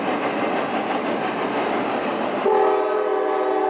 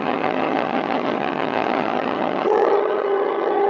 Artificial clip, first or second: second